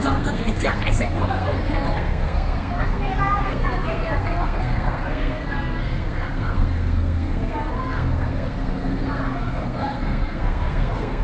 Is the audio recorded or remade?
remade